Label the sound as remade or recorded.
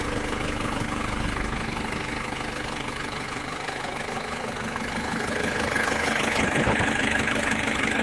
remade